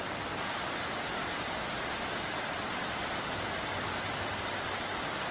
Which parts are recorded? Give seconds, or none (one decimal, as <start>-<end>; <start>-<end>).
0.0-5.3

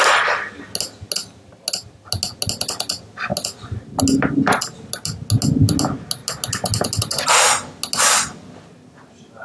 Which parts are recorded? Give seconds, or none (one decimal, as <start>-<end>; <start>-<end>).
0.0-9.4

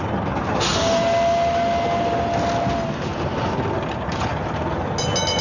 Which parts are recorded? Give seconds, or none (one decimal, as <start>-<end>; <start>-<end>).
0.0-5.4

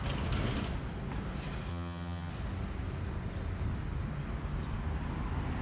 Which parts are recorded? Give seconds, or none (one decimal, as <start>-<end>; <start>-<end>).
0.0-1.7; 2.3-5.6